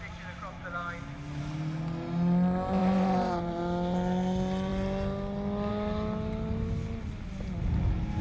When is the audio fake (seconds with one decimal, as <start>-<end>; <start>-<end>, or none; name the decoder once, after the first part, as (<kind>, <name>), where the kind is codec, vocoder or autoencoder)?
2.8-3.6 (vocoder, Vocos)